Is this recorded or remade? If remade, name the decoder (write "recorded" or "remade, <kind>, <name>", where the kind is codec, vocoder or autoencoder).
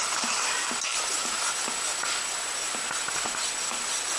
recorded